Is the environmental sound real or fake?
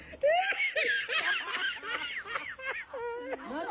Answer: real